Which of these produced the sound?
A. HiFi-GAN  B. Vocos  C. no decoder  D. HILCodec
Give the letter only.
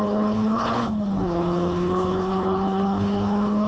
D